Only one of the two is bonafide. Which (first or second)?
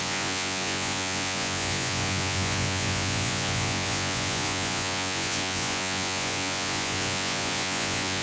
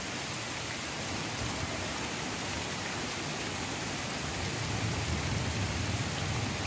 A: second